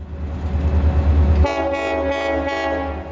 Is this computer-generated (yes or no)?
no